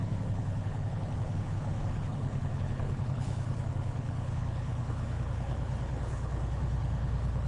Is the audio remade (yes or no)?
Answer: yes